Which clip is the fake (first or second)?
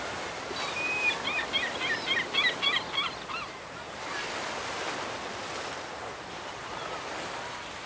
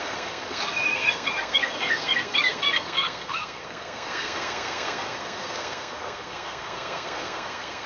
second